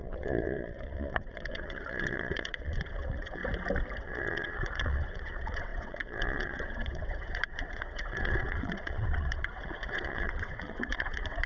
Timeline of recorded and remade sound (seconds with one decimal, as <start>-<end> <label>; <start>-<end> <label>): 0.0-3.4 remade; 3.4-4.0 recorded; 4.0-11.5 remade